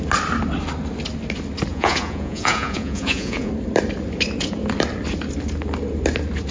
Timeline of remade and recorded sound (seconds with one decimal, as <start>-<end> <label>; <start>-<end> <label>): 0.0-1.7 recorded; 1.7-3.5 remade; 3.5-6.5 recorded